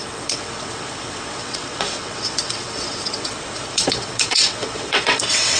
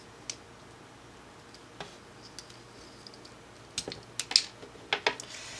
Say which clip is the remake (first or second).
first